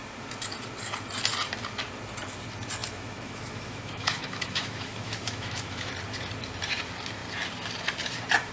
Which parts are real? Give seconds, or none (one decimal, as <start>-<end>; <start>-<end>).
0.0-2.8; 5.9-8.5